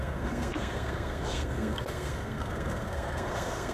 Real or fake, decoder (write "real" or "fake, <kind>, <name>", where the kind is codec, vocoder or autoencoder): fake, codec, SNAC